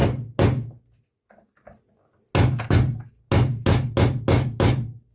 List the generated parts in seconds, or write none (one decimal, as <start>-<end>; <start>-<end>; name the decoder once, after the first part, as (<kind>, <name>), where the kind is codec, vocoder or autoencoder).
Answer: none